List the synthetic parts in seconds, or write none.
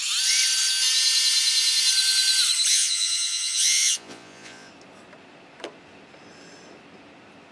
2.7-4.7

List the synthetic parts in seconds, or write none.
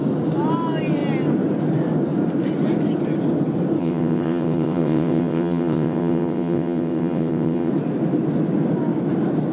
3.8-7.7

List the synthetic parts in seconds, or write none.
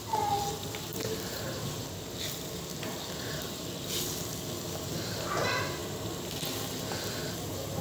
0.9-3.7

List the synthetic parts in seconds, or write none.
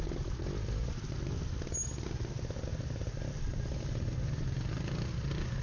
none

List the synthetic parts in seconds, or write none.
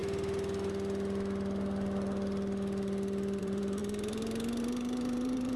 3.4-5.6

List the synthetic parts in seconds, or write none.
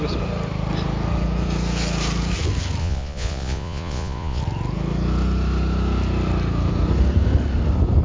2.8-4.4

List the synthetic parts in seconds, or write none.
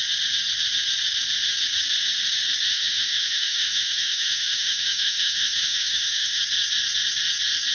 2.7-6.4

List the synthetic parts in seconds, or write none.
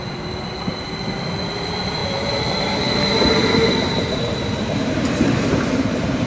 0.7-6.3